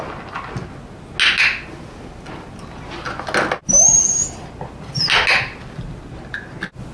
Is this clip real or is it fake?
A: real